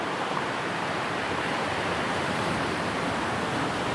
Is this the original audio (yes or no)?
no